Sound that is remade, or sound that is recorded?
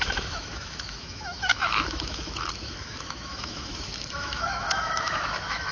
remade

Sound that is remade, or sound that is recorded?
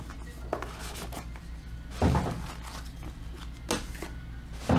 recorded